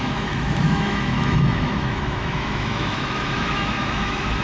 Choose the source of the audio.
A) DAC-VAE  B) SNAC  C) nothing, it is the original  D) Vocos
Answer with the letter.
A